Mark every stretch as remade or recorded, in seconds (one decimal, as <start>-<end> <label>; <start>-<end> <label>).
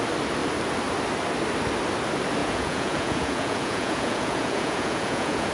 0.0-2.4 recorded; 2.4-5.5 remade